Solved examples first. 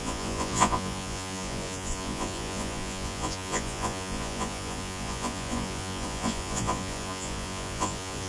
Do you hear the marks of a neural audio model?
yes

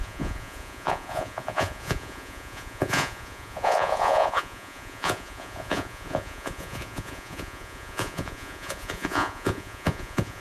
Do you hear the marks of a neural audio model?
yes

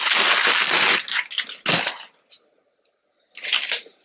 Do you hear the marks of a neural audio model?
no